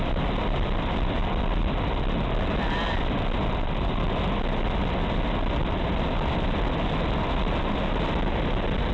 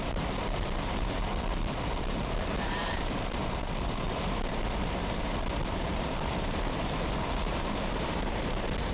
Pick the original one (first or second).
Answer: first